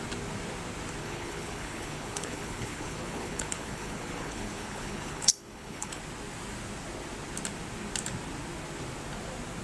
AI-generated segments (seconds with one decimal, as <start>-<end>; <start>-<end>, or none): 1.0-6.0

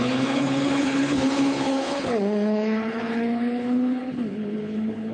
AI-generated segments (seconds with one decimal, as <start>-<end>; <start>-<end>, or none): 0.0-5.1

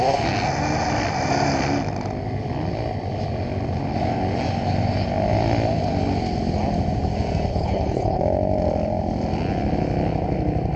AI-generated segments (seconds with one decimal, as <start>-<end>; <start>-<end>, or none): 7.5-8.2

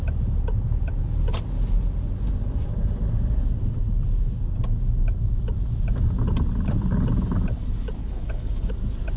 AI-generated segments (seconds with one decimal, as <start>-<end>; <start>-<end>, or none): 8.0-8.7

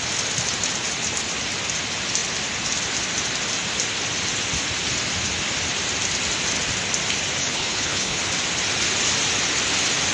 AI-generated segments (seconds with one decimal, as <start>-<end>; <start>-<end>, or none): 7.4-8.2

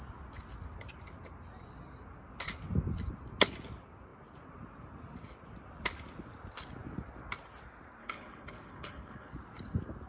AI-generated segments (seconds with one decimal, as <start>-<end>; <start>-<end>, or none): 8.0-9.3

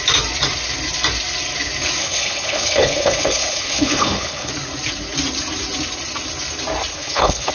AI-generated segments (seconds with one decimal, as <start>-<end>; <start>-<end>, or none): 2.0-4.5; 6.9-7.5